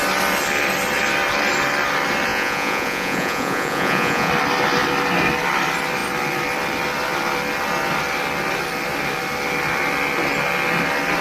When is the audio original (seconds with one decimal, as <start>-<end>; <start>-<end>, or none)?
0.0-2.3; 4.3-11.2